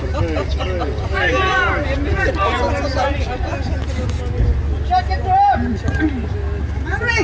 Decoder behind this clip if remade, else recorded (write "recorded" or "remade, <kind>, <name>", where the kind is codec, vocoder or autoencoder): recorded